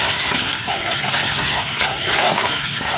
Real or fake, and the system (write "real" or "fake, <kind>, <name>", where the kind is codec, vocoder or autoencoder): fake, codec, SNAC